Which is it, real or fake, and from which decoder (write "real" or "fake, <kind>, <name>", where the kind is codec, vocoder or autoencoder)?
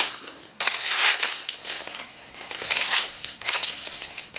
fake, codec, SNAC